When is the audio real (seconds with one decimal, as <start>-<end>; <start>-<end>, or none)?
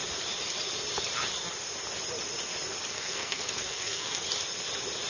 0.0-2.9; 4.2-5.1